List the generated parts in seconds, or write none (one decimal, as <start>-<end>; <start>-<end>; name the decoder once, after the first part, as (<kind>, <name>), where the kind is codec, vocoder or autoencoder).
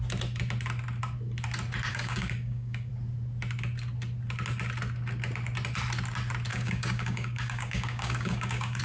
1.9-2.9 (codec, DAC); 6.5-8.8